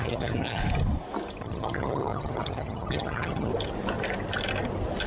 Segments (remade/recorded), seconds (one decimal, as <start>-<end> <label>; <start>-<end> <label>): 0.0-0.6 remade; 0.6-1.4 recorded; 1.4-3.5 remade; 3.5-5.1 recorded